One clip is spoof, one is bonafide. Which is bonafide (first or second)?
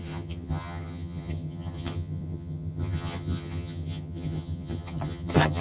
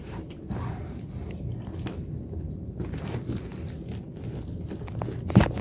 second